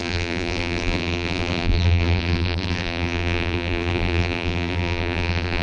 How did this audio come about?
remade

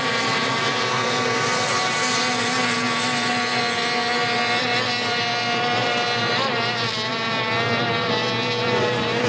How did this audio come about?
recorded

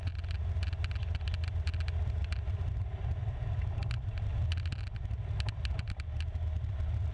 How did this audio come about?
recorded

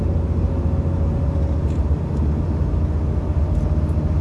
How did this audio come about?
recorded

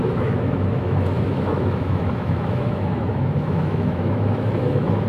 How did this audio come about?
remade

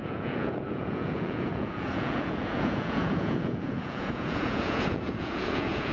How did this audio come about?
remade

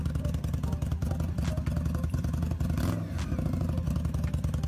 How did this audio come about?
recorded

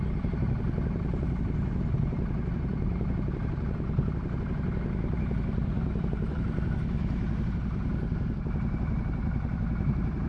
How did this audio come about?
remade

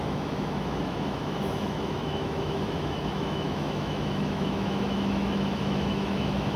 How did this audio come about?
remade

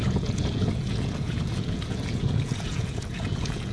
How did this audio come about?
remade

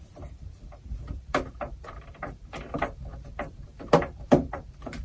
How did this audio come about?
remade